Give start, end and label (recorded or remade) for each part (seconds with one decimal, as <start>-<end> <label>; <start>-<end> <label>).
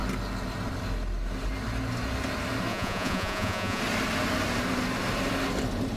0.0-2.7 recorded; 2.7-3.8 remade; 3.8-6.0 recorded